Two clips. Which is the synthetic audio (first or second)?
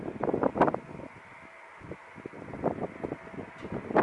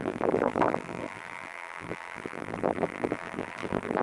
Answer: second